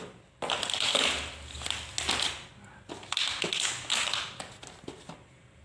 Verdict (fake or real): real